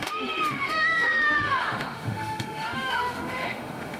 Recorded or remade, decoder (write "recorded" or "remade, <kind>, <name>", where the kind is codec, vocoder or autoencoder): remade, autoencoder, DAC-VAE